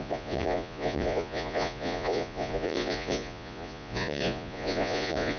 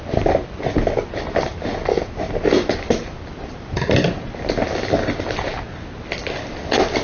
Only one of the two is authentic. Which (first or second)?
second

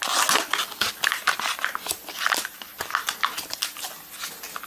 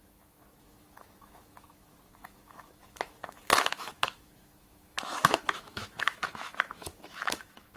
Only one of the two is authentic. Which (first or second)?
first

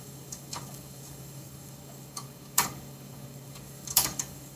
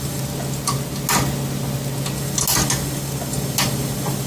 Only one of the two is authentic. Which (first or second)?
second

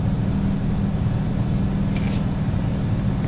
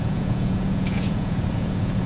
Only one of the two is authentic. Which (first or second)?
first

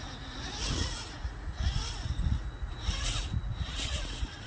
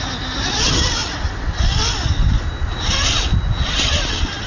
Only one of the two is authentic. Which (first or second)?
second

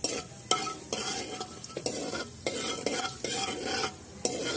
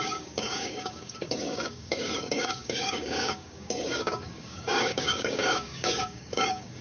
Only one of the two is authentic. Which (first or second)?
first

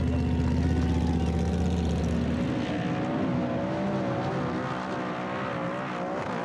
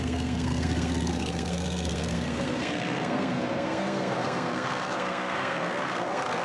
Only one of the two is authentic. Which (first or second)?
first